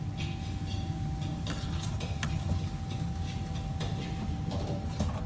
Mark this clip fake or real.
real